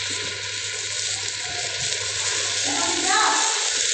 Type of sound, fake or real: real